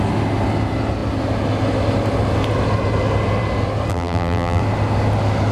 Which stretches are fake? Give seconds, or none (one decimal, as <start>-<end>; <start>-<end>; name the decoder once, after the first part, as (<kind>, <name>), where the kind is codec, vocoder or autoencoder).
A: 3.9-4.6 (vocoder, BigVGAN v2)